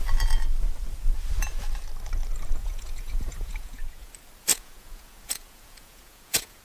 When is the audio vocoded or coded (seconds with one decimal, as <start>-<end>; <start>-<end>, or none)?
2.6-4.1; 4.5-6.6